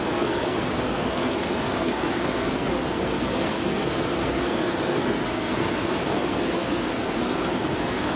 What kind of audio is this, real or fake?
fake